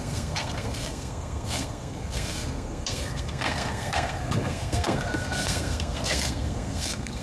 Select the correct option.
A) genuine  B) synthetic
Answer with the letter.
B